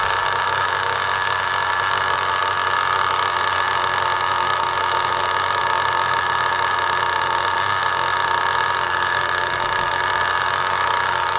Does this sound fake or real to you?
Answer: real